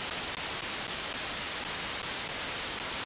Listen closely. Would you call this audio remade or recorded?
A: recorded